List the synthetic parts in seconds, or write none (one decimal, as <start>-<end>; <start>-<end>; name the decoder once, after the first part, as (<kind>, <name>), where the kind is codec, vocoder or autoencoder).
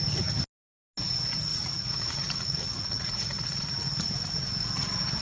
1.5-3.9 (vocoder, Vocos)